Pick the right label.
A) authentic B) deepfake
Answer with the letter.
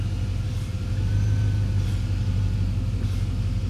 A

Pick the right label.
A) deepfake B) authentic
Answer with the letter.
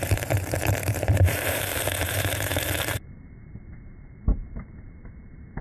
A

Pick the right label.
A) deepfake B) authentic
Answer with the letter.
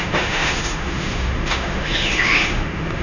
A